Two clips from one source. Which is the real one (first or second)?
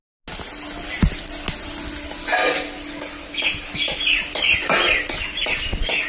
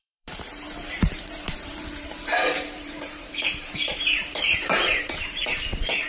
first